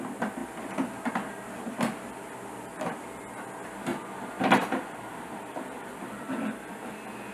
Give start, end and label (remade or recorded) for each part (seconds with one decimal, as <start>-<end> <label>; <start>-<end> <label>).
0.0-3.9 recorded; 3.9-5.9 remade; 5.9-7.3 recorded